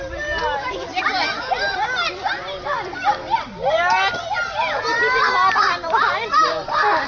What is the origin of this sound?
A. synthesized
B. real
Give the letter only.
B